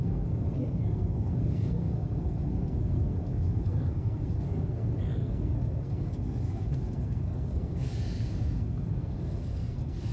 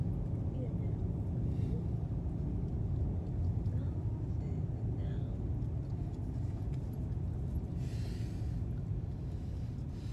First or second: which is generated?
first